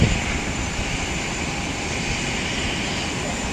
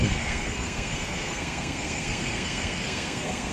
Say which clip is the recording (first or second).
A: first